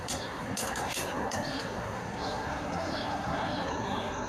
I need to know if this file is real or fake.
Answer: fake